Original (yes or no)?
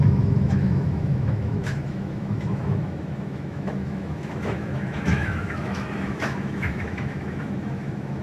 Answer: no